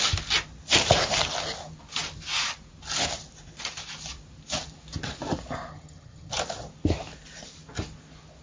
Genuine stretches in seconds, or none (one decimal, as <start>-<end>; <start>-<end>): 0.0-5.7; 6.3-8.4